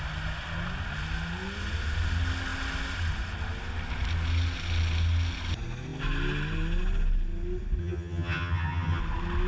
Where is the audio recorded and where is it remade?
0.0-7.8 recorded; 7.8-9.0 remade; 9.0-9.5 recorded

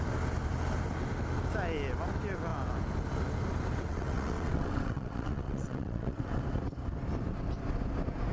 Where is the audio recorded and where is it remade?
0.0-3.9 recorded; 3.9-6.4 remade; 6.4-8.3 recorded

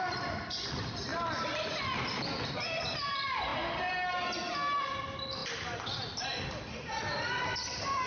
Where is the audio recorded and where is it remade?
0.0-3.5 remade; 3.5-4.8 recorded; 4.8-5.4 remade; 5.4-6.4 recorded; 6.4-8.1 remade

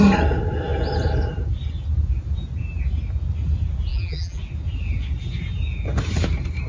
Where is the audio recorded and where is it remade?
0.0-3.9 recorded; 3.9-4.4 remade; 4.4-6.7 recorded